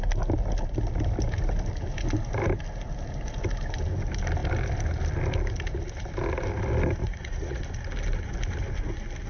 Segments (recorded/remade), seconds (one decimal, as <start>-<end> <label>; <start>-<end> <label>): 0.0-7.0 recorded; 7.0-7.6 remade; 7.6-9.3 recorded